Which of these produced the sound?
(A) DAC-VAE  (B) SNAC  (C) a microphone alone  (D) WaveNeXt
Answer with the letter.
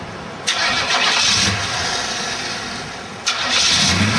C